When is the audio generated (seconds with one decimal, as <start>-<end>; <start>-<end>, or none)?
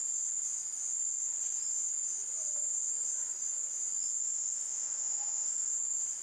4.2-5.7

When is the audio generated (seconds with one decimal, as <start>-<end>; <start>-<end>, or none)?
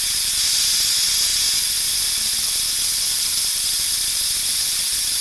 none